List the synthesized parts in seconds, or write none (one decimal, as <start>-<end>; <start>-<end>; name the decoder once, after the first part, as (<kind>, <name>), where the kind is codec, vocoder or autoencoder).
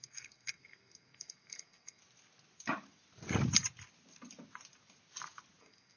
0.0-2.0 (codec, SNAC); 5.6-6.0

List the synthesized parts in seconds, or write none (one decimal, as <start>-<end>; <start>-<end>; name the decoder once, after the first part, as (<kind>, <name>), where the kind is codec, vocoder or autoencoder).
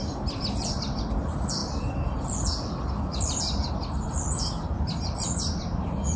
0.0-6.2 (vocoder, BigVGAN v2)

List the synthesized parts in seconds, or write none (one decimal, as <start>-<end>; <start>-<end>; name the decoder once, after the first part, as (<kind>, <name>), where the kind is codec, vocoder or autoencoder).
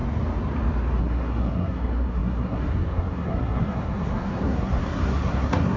1.0-5.8 (codec, SNAC)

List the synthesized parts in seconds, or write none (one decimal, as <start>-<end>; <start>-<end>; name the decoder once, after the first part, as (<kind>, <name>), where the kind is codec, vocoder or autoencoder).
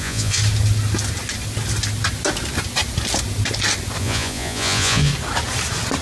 0.0-0.4 (vocoder, Vocos); 4.0-5.1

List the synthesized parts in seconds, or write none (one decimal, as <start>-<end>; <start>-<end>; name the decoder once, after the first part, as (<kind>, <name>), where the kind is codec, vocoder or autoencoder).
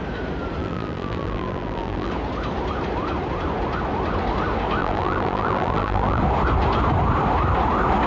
0.6-2.1 (vocoder, BigVGAN v2); 4.8-6.2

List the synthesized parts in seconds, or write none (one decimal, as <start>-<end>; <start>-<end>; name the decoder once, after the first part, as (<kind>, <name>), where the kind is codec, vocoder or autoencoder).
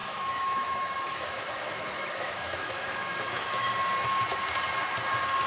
0.0-3.7 (autoencoder, DAC-VAE)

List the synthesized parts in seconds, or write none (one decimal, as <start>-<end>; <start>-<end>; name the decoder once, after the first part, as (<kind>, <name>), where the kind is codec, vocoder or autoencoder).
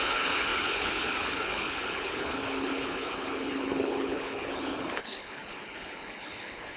0.0-6.8 (codec, HILCodec)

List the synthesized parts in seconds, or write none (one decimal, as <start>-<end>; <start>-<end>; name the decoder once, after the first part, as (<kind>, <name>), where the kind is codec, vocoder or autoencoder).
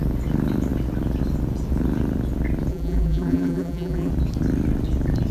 2.7-4.1 (vocoder, BigVGAN v2)